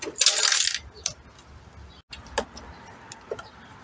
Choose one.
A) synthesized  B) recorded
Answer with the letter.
B